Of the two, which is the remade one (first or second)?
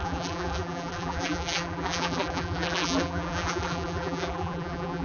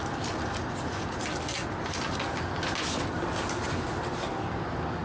first